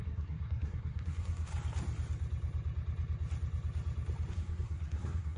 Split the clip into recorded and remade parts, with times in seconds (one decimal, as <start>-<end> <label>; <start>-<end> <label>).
0.0-1.5 remade; 1.5-4.3 recorded; 4.3-5.4 remade